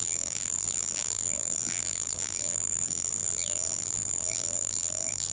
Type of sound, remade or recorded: remade